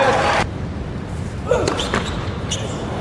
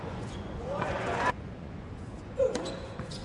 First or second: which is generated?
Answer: second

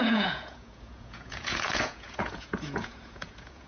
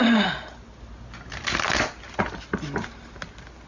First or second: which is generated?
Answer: first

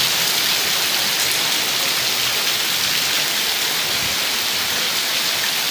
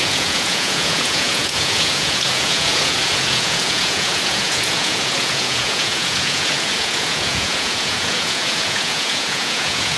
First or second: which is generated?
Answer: second